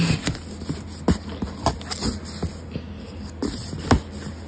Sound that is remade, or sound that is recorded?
recorded